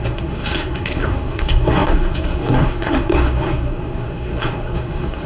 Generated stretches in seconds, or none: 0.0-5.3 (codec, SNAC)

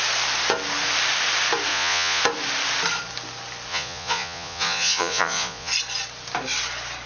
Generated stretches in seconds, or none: 1.7-2.2 (vocoder, Vocos); 3.7-5.7

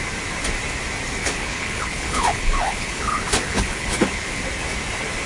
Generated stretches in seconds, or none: 1.2-4.4 (codec, HILCodec)